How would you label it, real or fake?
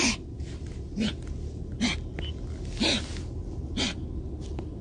real